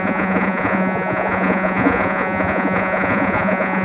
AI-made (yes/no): yes